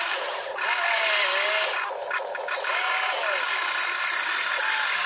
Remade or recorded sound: recorded